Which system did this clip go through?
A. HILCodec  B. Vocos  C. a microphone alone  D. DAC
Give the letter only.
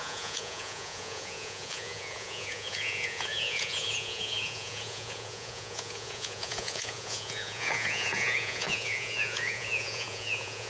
B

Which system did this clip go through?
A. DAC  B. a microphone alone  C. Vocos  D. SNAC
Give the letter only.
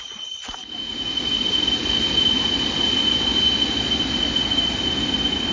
B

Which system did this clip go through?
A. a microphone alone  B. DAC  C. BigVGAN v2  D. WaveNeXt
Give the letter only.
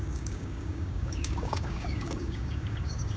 B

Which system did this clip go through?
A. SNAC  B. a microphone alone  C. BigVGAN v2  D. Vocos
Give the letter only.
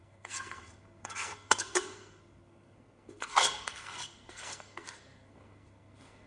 A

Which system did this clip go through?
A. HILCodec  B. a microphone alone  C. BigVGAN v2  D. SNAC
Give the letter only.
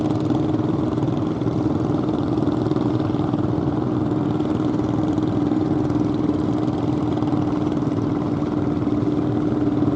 B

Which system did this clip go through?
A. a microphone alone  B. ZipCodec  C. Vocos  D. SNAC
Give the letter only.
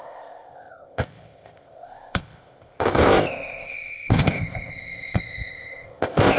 B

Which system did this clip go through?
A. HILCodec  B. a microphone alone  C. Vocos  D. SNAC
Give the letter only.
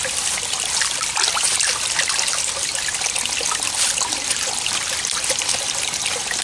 B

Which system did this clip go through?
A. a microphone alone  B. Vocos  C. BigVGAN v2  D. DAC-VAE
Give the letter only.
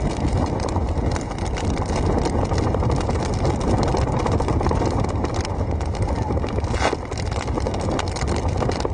A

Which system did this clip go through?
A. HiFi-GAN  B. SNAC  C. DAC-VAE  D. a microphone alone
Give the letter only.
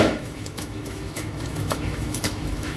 C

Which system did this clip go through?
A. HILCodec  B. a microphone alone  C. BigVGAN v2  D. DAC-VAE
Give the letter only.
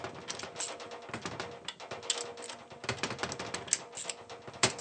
B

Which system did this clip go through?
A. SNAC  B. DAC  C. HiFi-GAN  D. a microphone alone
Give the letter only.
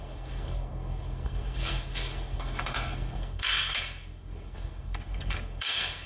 A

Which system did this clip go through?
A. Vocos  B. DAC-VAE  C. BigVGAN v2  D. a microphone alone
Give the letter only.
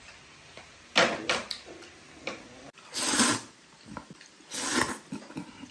D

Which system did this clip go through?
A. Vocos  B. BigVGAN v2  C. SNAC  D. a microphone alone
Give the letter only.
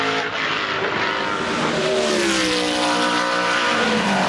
D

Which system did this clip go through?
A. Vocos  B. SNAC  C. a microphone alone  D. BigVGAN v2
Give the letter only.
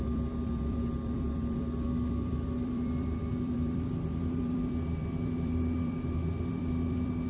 D